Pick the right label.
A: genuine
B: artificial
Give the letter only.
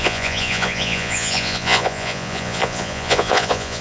B